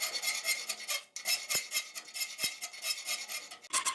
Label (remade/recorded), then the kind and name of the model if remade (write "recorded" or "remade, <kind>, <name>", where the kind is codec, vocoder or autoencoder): recorded